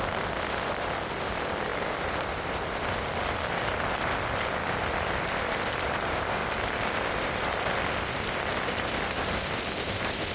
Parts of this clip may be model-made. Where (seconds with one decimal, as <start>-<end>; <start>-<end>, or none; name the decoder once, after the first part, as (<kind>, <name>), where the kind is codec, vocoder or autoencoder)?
none